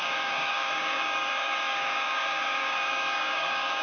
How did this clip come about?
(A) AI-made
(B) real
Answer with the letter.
A